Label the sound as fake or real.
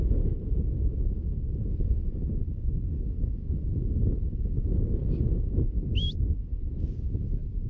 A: real